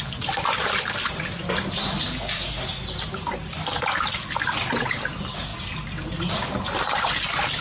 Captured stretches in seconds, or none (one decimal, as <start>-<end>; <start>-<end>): 0.0-7.6